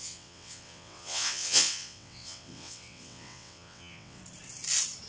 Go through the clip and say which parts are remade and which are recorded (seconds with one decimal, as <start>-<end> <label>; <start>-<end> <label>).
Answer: 0.0-4.2 remade; 4.2-5.1 recorded